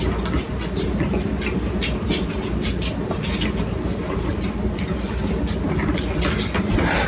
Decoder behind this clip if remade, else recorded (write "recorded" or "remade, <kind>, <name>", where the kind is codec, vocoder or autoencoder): recorded